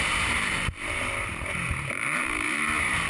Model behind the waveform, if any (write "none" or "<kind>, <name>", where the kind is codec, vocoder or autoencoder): vocoder, BigVGAN v2